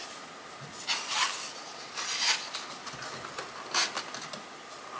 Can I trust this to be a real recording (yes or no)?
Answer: yes